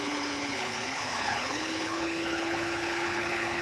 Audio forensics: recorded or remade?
remade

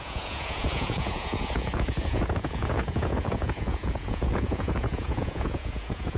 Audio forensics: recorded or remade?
remade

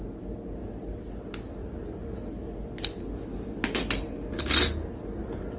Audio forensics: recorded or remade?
recorded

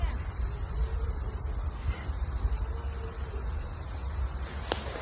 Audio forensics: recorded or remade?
remade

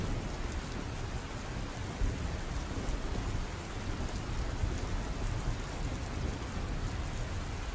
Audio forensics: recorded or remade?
recorded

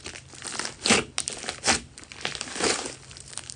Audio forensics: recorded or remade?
recorded